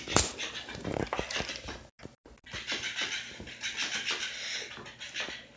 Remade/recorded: recorded